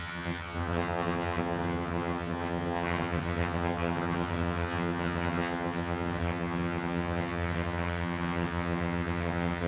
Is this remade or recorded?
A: remade